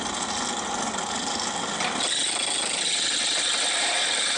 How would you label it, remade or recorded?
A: recorded